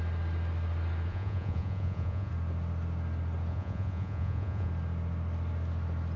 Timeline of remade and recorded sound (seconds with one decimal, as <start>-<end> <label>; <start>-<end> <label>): 0.0-1.1 recorded; 1.1-2.3 remade; 2.3-3.5 recorded; 3.5-4.7 remade; 4.7-6.2 recorded